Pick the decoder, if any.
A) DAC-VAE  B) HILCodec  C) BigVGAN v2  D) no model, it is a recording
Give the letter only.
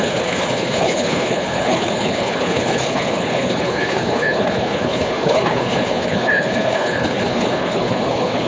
B